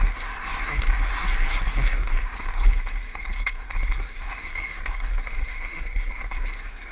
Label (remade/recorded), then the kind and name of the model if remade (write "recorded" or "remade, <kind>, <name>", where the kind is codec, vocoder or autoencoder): remade, codec, SNAC